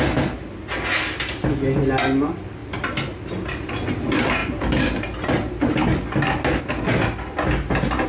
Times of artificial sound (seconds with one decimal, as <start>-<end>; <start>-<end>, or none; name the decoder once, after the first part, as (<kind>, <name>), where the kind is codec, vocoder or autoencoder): none